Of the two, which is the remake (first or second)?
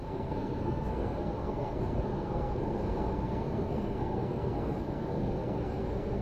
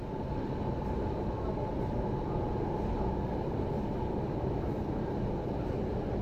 first